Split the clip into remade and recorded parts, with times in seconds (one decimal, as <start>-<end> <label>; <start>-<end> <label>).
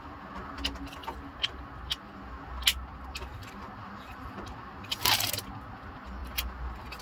0.0-1.0 recorded; 1.0-1.6 remade; 1.6-3.3 recorded; 3.3-5.3 remade; 5.3-7.0 recorded